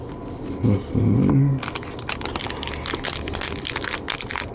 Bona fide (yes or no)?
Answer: yes